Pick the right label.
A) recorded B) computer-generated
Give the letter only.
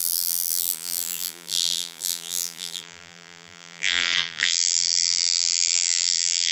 B